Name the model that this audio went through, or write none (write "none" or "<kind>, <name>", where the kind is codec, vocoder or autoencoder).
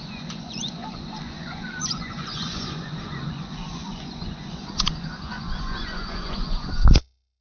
vocoder, Vocos